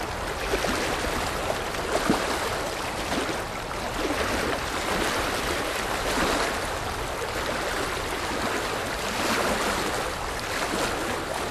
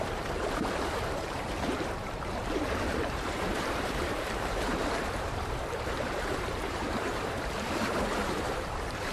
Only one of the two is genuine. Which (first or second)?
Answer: first